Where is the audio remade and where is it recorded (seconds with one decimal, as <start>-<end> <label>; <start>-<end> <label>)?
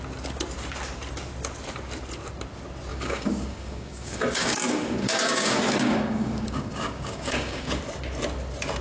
0.0-2.9 recorded; 2.9-7.8 remade; 7.8-8.8 recorded